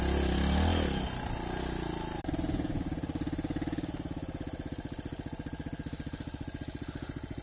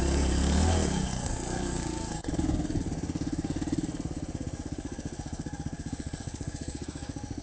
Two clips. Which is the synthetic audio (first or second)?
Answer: second